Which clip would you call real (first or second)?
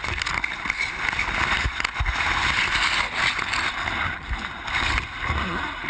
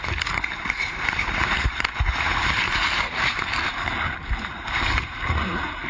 first